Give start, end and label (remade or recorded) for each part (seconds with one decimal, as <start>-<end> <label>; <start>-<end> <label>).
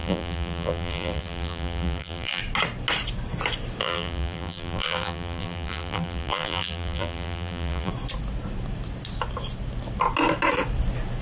0.0-2.4 remade; 2.4-3.8 recorded; 3.8-7.9 remade; 7.9-11.2 recorded